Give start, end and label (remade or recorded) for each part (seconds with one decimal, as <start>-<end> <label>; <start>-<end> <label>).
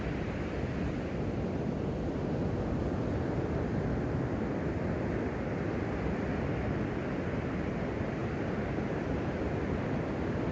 0.0-10.5 recorded